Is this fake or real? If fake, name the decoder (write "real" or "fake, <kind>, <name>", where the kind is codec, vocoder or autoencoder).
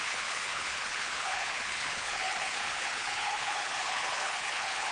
fake, codec, HILCodec